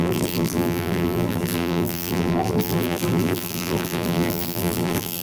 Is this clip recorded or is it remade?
remade